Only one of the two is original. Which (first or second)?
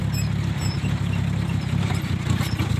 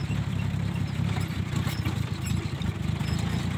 first